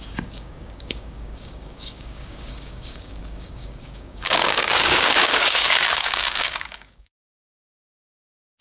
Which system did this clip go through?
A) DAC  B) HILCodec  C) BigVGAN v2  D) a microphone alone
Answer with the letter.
A